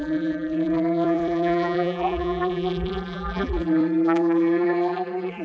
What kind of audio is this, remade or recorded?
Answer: remade